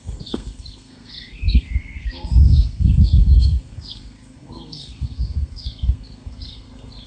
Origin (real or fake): fake